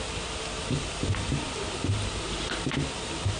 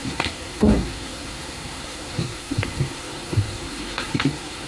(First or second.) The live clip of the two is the first